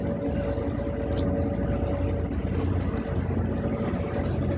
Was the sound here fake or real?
real